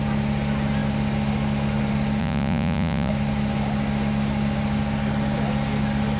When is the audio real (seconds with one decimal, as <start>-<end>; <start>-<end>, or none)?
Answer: 0.0-2.2; 3.1-6.2